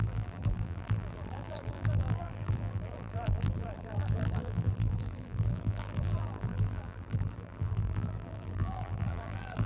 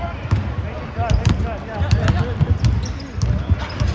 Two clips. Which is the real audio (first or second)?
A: second